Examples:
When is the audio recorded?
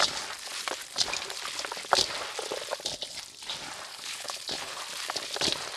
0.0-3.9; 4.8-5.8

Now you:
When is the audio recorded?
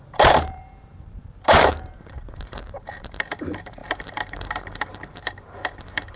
none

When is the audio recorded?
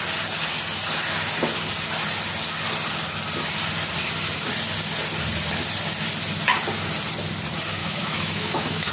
0.0-7.8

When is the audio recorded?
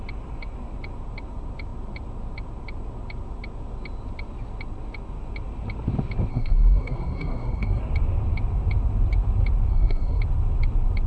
0.0-6.3; 7.8-9.7; 10.2-11.1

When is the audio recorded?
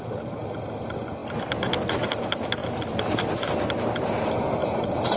0.0-2.6; 3.2-4.6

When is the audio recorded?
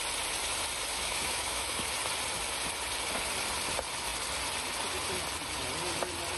0.0-0.9; 1.9-6.4